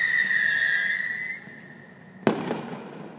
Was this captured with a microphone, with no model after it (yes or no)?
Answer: yes